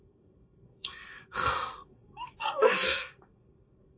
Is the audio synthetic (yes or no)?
yes